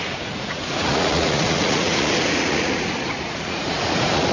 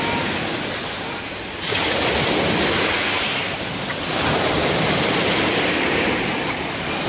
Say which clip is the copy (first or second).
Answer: first